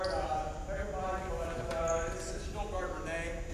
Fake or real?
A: real